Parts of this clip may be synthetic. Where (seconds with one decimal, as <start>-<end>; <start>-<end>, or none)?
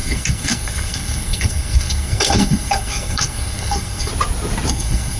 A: 0.0-4.1; 4.7-5.2